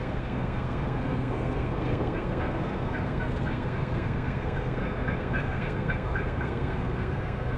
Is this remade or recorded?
remade